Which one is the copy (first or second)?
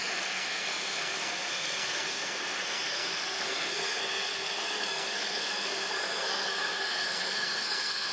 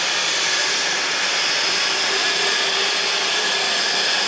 first